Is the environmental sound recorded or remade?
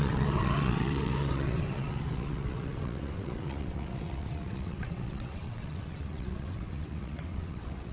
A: remade